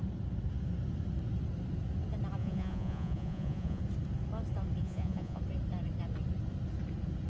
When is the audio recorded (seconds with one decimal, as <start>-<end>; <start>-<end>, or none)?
0.0-2.4; 3.8-4.8; 5.4-7.3